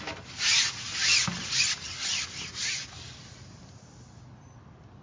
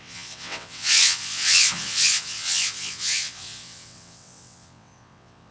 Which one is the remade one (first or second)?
second